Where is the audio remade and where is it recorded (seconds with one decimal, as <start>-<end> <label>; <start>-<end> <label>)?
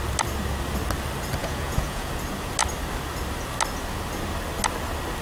0.0-1.4 recorded; 1.4-2.1 remade; 2.1-5.2 recorded